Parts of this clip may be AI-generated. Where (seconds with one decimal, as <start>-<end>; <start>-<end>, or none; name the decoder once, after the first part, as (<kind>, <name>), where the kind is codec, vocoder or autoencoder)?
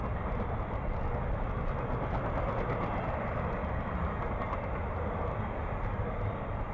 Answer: none